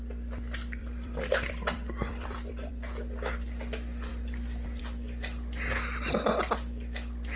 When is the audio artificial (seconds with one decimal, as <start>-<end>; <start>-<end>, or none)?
0.8-2.7